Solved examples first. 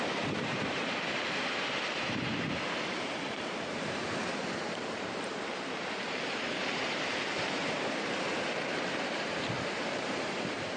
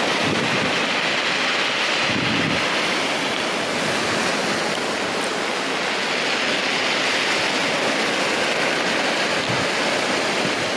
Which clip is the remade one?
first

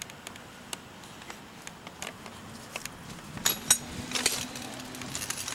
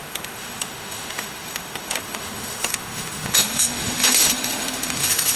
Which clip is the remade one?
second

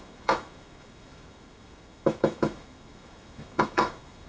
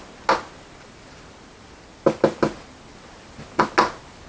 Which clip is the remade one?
first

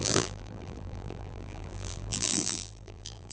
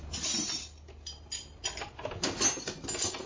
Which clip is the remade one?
first